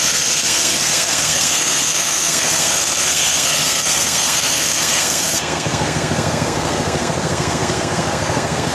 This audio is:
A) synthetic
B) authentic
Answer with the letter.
A